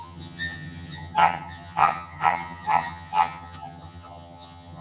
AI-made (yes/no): yes